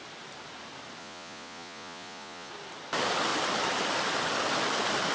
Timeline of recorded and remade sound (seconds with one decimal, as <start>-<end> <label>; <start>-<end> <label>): 0.0-1.0 recorded; 1.0-2.5 remade; 2.5-5.1 recorded